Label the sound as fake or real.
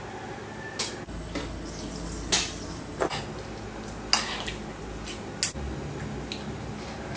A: real